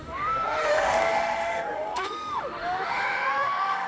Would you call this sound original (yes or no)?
no